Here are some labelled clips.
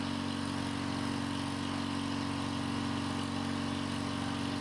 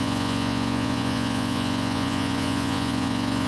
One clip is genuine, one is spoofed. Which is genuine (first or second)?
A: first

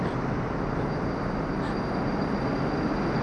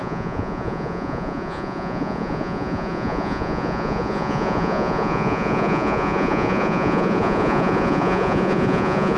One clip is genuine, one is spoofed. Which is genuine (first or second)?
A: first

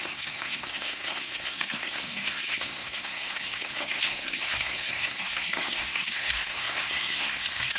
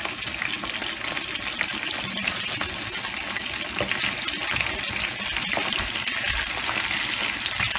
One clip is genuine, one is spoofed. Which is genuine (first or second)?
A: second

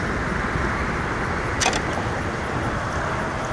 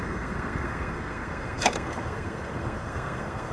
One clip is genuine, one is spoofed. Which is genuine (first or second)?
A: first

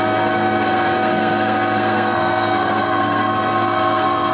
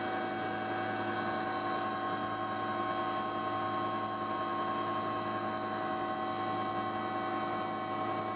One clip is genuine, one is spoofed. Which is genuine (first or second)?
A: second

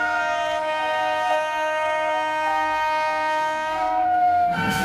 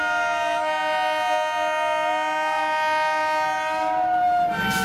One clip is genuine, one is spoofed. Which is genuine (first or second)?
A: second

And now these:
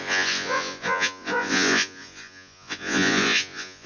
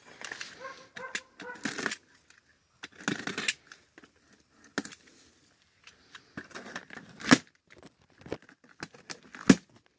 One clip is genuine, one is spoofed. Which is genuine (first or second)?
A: second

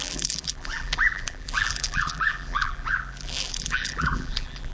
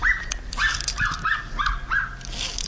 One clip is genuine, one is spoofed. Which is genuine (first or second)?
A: second